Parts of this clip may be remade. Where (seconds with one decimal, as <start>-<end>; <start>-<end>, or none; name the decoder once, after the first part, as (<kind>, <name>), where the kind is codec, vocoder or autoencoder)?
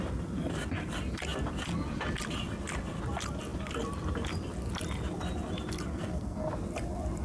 5.9-6.5 (codec, SNAC)